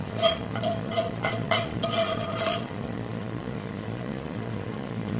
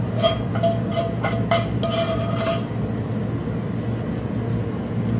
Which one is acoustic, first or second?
second